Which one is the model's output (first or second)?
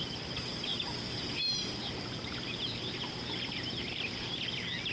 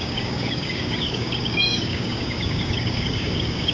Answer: second